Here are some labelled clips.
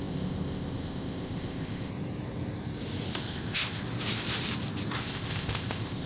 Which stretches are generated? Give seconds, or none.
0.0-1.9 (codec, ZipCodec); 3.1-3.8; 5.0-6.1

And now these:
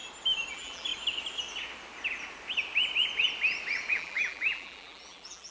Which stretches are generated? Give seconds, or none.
0.5-0.9 (vocoder, BigVGAN v2); 3.9-5.5

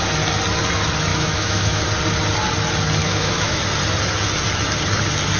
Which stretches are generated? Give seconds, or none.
1.1-1.8 (autoencoder, DAC-VAE); 3.0-3.6

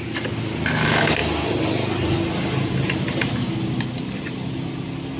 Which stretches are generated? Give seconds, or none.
none

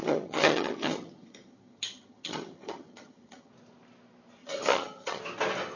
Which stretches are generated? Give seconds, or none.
0.0-3.5 (vocoder, HiFi-GAN); 4.4-5.2

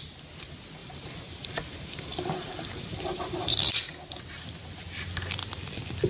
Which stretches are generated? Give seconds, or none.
0.8-3.6 (vocoder, BigVGAN v2)